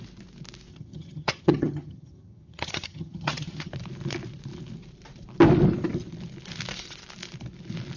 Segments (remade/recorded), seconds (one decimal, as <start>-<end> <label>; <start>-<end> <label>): 0.0-0.7 recorded; 0.7-3.7 remade; 3.7-8.0 recorded